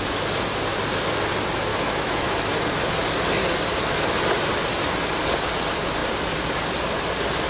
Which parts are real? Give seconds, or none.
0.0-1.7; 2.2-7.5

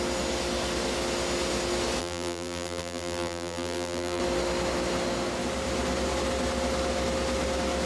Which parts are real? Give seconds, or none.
0.0-2.0; 4.2-7.9

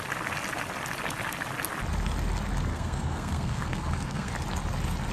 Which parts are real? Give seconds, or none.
0.0-2.7; 4.3-5.1

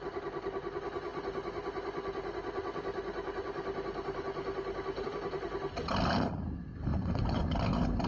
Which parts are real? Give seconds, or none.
0.0-6.9; 7.6-8.1

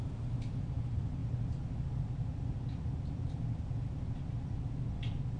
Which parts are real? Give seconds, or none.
0.0-5.4

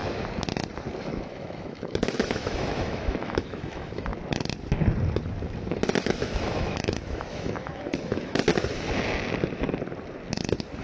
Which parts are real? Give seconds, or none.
0.0-1.0; 4.1-6.0; 8.4-10.8